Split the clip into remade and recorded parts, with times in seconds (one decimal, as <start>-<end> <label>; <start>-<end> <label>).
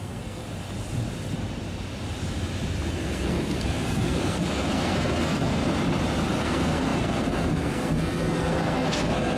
0.0-0.4 remade; 0.4-2.9 recorded; 2.9-5.6 remade; 5.6-6.4 recorded; 6.4-9.4 remade